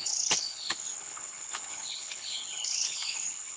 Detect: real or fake fake